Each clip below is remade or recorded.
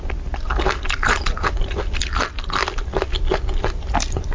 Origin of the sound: recorded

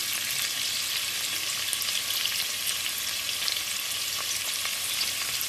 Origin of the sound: recorded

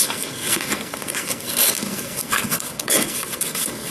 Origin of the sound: remade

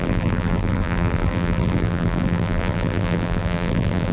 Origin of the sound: remade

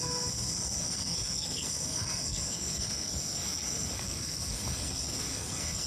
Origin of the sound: remade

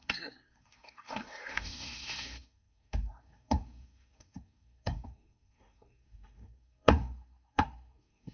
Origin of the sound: remade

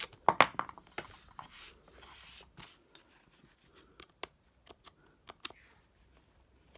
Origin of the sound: recorded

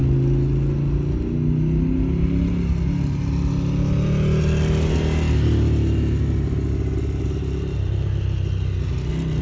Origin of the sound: recorded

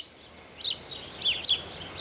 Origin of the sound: recorded